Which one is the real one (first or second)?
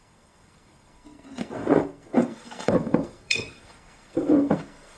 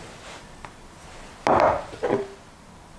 second